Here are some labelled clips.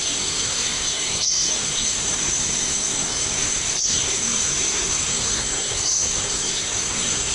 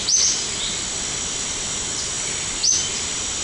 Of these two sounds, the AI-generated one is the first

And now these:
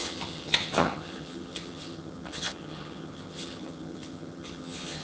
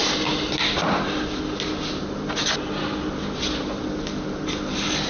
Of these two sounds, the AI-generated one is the first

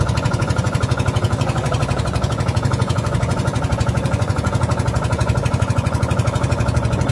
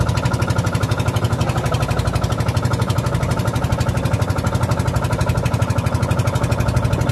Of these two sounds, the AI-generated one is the first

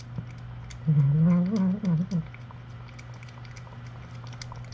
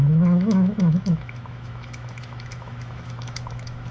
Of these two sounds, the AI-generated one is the second